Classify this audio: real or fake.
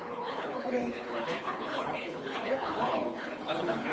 fake